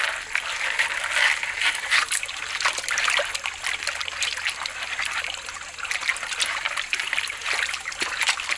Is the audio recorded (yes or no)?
yes